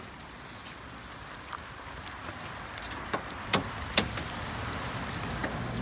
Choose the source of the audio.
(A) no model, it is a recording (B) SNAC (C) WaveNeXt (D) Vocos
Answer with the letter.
A